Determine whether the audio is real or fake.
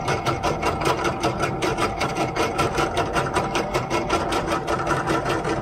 fake